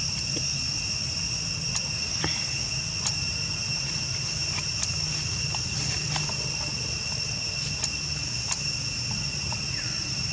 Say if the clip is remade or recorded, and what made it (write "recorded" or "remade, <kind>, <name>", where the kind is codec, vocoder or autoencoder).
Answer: recorded